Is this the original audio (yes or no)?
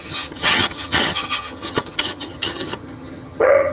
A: no